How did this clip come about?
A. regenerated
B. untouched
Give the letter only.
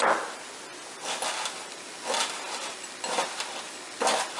B